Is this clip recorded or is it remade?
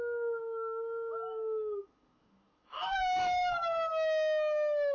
remade